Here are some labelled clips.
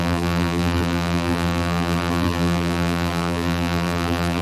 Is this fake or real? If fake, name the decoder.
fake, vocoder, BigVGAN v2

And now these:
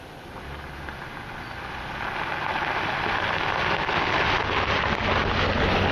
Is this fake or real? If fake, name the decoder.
real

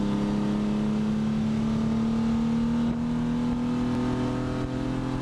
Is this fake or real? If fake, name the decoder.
real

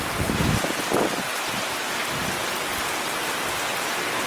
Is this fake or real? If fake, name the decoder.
real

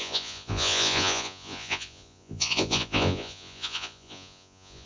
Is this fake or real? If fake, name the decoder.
fake, vocoder, Vocos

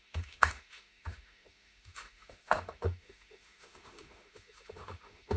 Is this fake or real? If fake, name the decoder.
fake, autoencoder, DAC-VAE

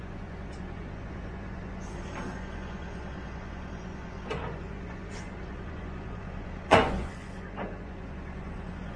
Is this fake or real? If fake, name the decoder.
fake, vocoder, Vocos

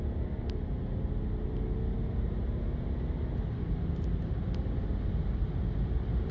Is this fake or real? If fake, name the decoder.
real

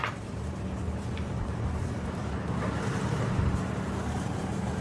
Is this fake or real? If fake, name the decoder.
fake, vocoder, BigVGAN v2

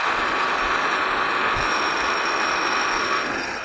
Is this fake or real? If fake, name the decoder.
real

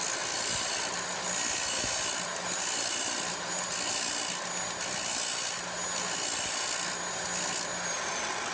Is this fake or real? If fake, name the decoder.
real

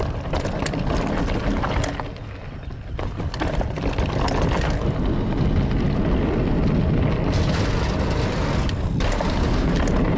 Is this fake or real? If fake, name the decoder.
real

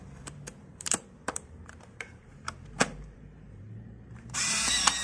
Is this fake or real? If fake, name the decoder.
fake, vocoder, BigVGAN v2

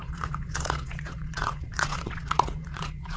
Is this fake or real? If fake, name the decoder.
fake, vocoder, Vocos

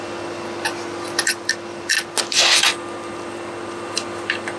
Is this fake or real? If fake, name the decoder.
real